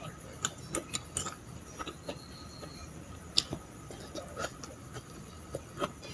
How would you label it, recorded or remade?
recorded